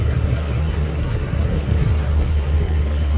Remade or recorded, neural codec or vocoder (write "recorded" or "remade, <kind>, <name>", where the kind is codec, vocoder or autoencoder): remade, codec, SNAC